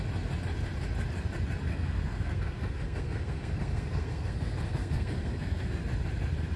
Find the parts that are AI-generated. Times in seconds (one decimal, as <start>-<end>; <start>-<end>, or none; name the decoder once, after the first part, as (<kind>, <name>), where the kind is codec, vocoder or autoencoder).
1.7-5.7 (codec, SNAC)